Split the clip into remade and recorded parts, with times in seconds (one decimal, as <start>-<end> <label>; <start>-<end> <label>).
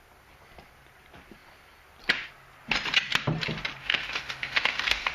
0.0-3.8 recorded; 3.8-5.1 remade